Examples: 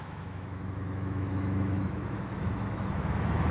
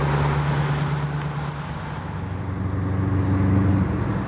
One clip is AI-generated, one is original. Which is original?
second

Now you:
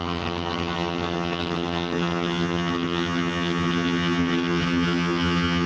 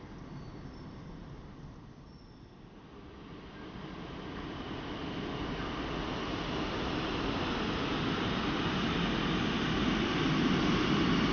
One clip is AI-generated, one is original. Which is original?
second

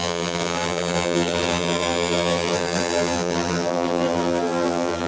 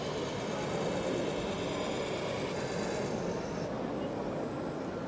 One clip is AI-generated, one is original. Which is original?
second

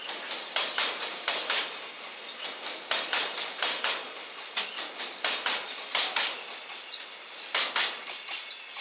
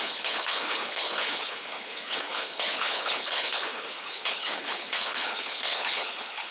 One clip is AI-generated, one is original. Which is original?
first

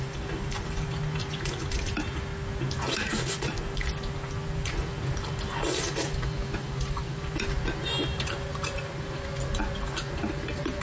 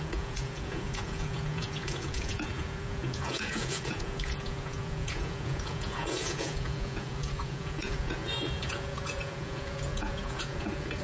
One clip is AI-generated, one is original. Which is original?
first